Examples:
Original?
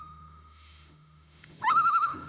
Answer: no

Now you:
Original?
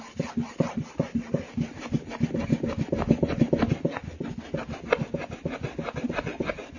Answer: yes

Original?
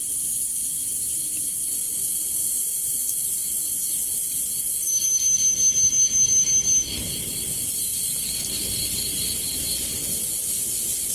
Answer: yes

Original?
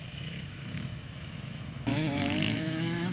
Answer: no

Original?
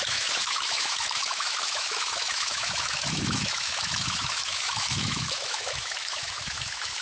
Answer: no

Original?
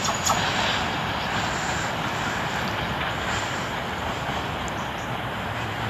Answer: yes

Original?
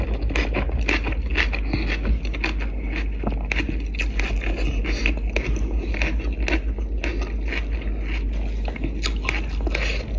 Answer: yes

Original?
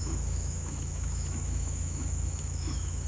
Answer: no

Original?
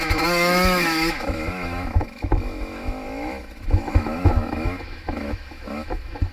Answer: no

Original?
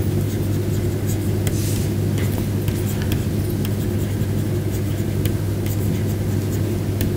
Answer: yes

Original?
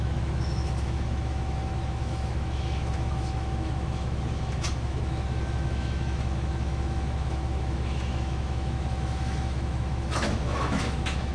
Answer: no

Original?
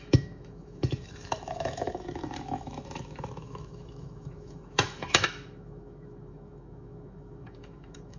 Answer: no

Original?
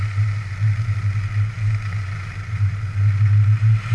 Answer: yes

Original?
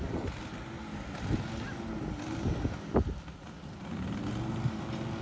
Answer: yes